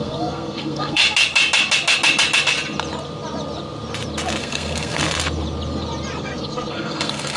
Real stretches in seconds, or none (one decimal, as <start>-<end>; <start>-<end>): 1.0-4.4; 5.0-6.2